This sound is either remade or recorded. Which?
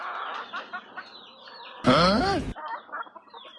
remade